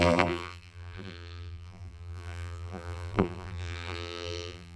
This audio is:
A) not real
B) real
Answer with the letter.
A